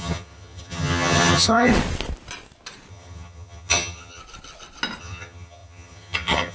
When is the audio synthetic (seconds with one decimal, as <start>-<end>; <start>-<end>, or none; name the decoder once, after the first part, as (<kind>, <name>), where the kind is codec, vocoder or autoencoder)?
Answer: 0.0-1.7 (vocoder, HiFi-GAN); 2.9-4.2; 5.0-6.5